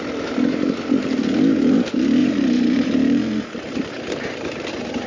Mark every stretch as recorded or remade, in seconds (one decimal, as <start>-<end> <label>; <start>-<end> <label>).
0.0-2.2 recorded; 2.2-5.1 remade